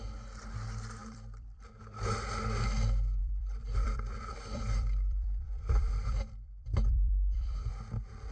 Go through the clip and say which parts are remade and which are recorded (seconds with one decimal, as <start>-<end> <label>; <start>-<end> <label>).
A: 0.0-1.0 recorded; 1.0-1.7 remade; 1.7-3.2 recorded; 3.2-7.7 remade; 7.7-8.3 recorded